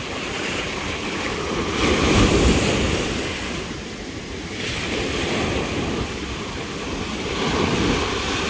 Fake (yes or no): no